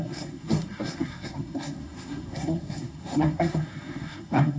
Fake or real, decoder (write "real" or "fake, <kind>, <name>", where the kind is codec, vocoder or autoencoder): fake, codec, SNAC